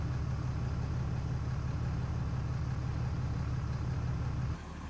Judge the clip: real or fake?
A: real